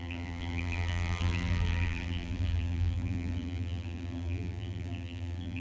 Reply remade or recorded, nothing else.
remade